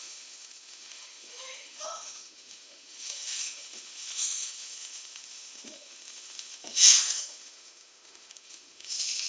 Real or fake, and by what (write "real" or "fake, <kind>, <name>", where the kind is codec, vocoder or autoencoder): fake, autoencoder, DAC-VAE